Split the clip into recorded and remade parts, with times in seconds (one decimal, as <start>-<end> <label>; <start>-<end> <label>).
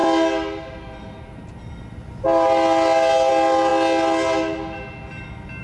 0.0-5.6 recorded